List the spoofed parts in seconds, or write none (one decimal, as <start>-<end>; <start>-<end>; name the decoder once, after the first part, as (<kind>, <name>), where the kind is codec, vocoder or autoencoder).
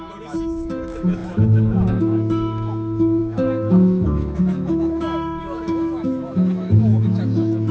0.0-7.7 (autoencoder, DAC-VAE)